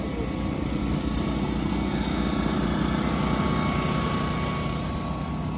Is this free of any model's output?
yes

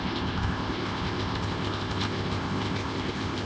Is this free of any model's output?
no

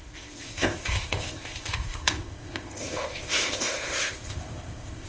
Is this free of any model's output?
no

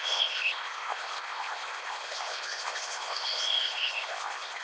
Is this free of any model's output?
no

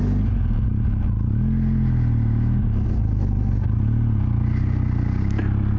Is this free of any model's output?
yes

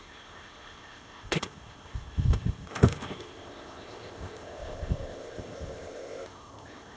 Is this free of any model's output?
no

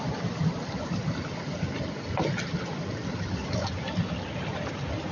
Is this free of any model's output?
yes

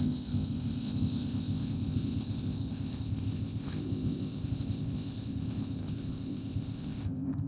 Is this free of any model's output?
no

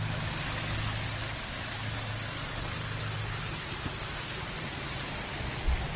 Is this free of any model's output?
yes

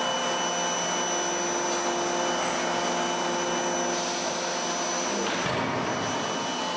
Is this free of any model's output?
yes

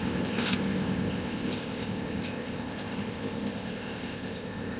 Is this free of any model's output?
no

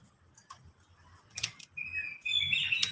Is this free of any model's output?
yes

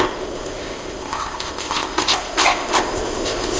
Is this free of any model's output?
no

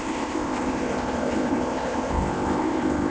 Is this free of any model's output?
no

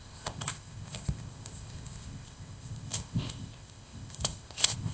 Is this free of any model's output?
no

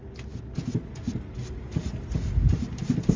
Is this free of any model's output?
yes